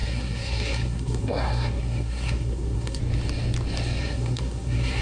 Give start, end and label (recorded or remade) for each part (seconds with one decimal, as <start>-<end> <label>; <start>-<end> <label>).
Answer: 0.0-3.0 remade; 3.0-4.0 recorded; 4.0-5.0 remade